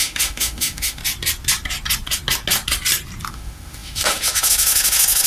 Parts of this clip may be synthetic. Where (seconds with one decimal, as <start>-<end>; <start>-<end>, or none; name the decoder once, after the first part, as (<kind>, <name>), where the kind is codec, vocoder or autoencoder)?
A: 0.0-1.0 (autoencoder, DAC-VAE); 3.3-5.3